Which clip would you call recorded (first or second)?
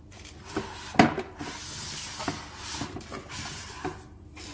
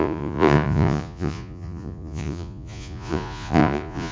first